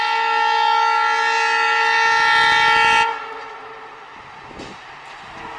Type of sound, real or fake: real